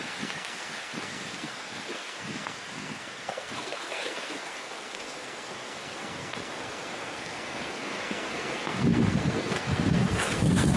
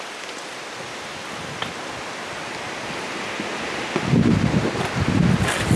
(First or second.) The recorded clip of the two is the second